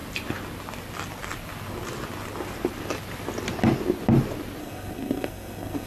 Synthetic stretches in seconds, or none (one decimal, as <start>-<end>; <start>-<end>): 4.6-5.9